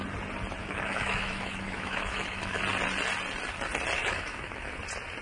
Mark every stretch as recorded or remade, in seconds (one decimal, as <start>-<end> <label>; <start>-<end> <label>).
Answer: 0.0-0.6 recorded; 0.6-2.6 remade; 2.6-4.0 recorded; 4.0-4.8 remade; 4.8-5.2 recorded